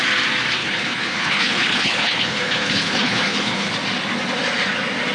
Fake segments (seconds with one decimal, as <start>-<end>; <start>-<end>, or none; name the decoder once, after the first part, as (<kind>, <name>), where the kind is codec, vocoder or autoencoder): 0.6-3.7 (codec, HILCodec)